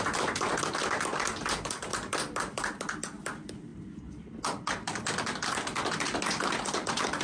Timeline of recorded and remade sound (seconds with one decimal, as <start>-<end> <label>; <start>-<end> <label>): 0.0-7.2 recorded